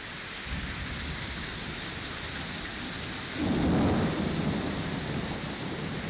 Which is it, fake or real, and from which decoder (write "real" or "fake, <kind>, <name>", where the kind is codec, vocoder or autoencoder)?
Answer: real